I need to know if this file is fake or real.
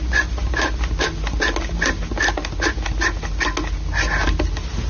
real